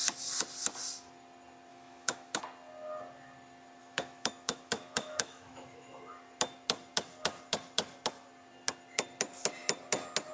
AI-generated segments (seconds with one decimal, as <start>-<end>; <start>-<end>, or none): 1.7-2.4; 3.8-6.0